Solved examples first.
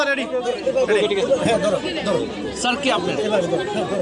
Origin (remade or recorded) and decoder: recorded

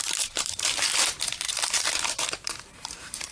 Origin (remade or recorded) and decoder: remade, vocoder, BigVGAN v2